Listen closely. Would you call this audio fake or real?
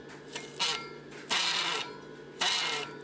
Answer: real